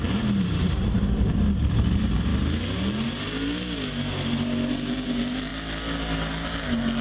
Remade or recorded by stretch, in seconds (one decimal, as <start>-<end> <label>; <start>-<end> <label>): 0.0-2.3 remade; 2.3-4.7 recorded; 4.7-5.5 remade; 5.5-7.0 recorded

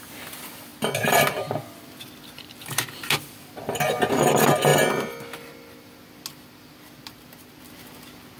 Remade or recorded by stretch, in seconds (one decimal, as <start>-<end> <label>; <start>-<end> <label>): 0.0-8.4 recorded